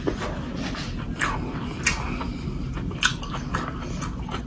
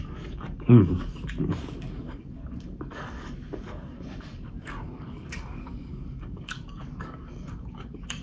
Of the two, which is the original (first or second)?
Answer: first